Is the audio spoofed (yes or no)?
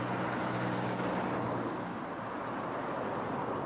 no